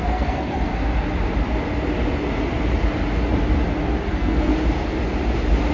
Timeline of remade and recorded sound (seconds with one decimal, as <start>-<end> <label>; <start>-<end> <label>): 0.0-0.7 remade; 0.7-4.1 recorded; 4.1-4.5 remade; 4.5-5.7 recorded